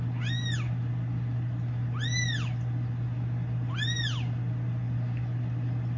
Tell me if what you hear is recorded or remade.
recorded